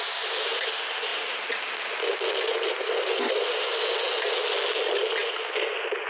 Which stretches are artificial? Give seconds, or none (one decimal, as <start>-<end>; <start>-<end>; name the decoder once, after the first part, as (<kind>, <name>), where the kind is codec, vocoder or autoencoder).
none